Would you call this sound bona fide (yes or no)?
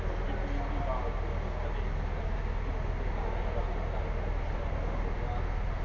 yes